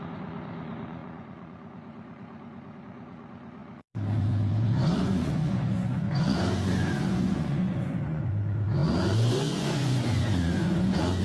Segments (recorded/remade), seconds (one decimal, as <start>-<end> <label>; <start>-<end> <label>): 0.0-11.2 remade